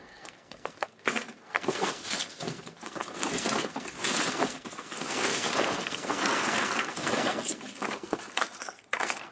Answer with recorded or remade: remade